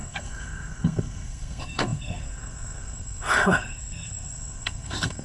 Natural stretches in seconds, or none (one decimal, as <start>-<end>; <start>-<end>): none

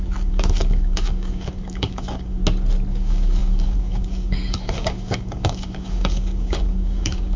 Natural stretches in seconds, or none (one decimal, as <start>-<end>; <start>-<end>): 2.4-2.9

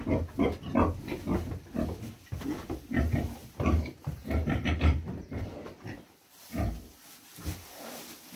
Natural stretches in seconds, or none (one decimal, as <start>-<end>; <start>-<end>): 0.0-3.4; 6.1-8.3

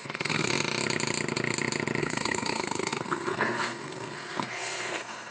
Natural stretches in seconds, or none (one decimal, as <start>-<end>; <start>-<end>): 0.5-2.0